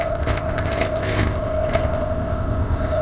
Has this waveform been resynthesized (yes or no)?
yes